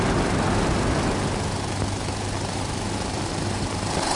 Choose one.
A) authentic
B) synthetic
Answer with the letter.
A